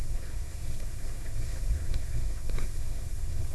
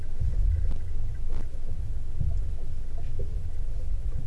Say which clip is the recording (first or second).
second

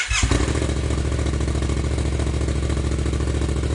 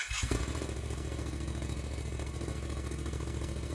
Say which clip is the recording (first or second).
first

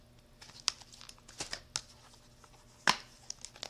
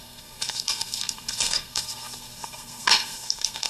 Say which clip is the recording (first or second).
first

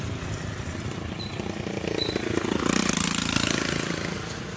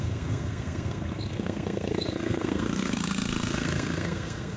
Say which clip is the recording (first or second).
first